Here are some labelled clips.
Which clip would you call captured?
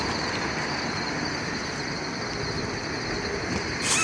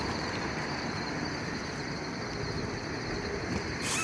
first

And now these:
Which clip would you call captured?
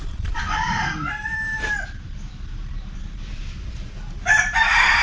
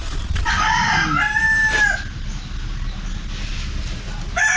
second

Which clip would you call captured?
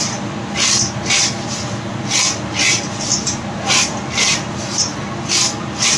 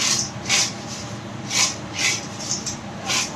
first